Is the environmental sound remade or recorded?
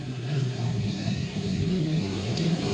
remade